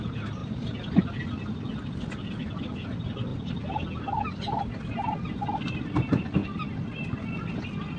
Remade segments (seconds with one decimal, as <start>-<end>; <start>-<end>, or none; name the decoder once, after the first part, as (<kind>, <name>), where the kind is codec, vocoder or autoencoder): none